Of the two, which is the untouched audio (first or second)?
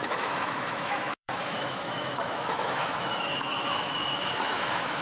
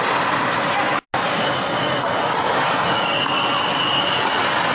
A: second